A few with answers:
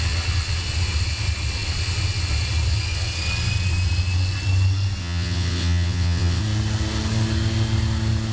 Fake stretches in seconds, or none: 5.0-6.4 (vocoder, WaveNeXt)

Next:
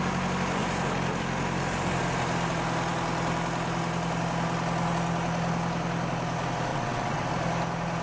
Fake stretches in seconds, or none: 6.7-7.3 (vocoder, WaveNeXt)

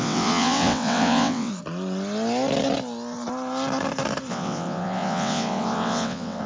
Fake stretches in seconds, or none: 0.0-1.5 (vocoder, WaveNeXt); 4.3-6.5

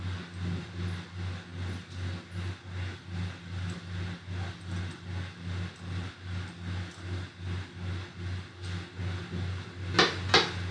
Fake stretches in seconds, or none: none

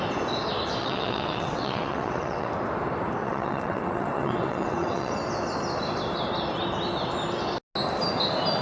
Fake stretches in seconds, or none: 0.8-2.5 (vocoder, WaveNeXt); 3.2-5.1